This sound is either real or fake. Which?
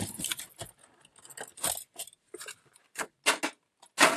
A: real